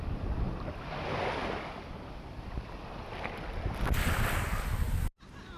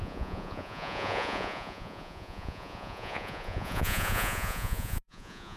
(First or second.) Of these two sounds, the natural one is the first